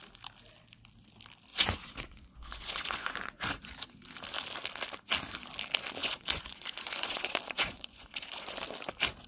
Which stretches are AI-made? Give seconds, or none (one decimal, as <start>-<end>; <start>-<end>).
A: 1.5-3.6; 6.0-8.6